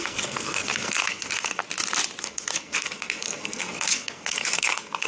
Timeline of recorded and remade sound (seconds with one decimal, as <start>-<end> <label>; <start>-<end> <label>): 0.0-1.6 remade; 1.6-2.2 recorded; 2.2-5.1 remade